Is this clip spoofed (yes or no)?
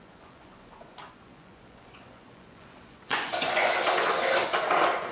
yes